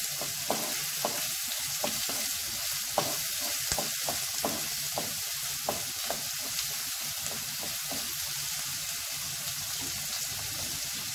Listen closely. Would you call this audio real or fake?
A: real